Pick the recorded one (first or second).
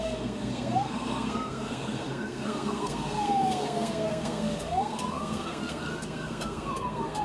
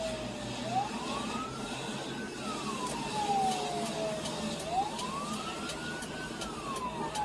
second